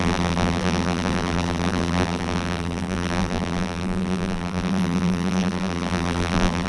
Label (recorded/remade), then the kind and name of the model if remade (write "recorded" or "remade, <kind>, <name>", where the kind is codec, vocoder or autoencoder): remade, vocoder, BigVGAN v2